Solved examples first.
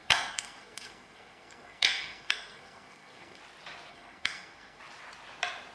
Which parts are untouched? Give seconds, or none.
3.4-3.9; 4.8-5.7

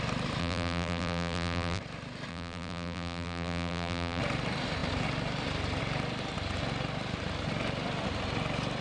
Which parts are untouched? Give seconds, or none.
0.0-0.4; 1.8-2.3; 4.2-8.8